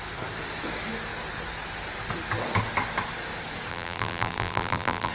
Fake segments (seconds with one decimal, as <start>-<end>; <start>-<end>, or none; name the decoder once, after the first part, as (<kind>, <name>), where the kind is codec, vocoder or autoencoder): 3.7-5.1 (vocoder, BigVGAN v2)